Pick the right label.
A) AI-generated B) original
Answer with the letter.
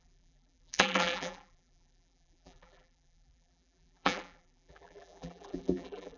A